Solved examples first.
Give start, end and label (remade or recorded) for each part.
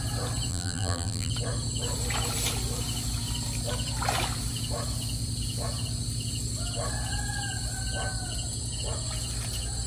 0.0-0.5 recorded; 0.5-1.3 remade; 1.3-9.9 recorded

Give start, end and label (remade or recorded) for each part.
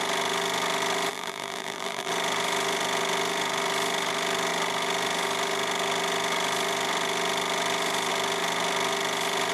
0.0-1.1 recorded; 1.1-2.1 remade; 2.1-9.5 recorded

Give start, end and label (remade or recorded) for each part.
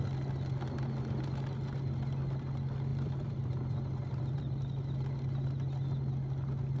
0.0-2.9 recorded; 2.9-4.4 remade; 4.4-6.8 recorded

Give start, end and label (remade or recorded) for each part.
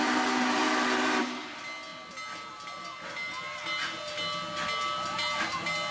0.0-1.2 remade; 1.2-5.9 recorded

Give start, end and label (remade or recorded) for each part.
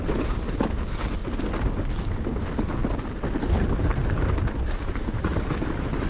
0.0-1.2 remade; 1.2-2.1 recorded; 2.1-2.8 remade; 2.8-3.4 recorded; 3.4-4.0 remade; 4.0-5.2 recorded; 5.2-6.1 remade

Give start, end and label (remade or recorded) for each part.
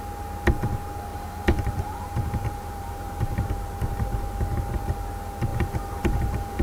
0.0-1.1 recorded; 1.1-3.5 remade; 3.5-5.5 recorded; 5.5-6.6 remade